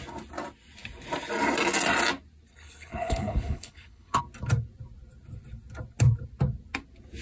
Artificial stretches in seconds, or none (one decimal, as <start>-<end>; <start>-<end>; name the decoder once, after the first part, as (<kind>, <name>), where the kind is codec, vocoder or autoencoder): 2.5-4.2 (codec, HILCodec)